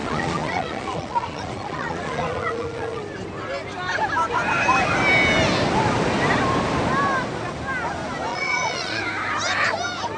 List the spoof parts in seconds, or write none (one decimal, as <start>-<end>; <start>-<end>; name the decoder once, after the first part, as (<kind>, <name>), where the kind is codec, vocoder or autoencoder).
0.0-3.0 (vocoder, Vocos); 8.3-9.0